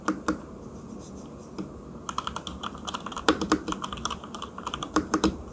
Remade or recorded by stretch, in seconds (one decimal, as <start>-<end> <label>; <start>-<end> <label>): 0.0-2.5 recorded; 2.5-5.5 remade